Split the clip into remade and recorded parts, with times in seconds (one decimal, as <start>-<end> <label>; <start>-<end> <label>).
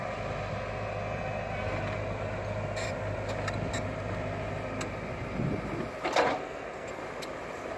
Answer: 0.0-6.4 recorded; 6.4-7.0 remade; 7.0-7.8 recorded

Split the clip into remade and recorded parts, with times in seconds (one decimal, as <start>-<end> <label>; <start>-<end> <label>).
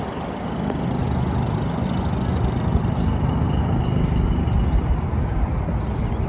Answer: 0.0-6.3 recorded